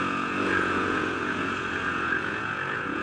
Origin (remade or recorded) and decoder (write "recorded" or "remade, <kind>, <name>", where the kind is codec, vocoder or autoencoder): remade, vocoder, Vocos